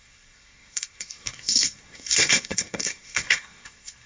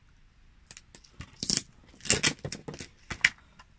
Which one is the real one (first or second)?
second